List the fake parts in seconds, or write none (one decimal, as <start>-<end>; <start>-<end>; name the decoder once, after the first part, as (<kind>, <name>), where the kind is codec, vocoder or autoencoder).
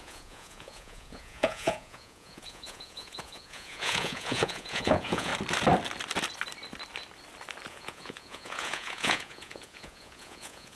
0.0-5.3 (vocoder, Vocos); 7.7-10.8